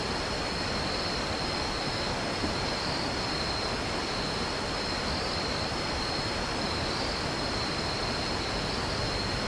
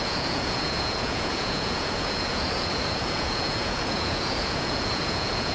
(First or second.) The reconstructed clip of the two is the second